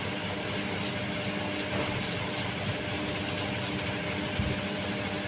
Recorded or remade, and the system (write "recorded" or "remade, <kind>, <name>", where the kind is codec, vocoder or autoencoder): recorded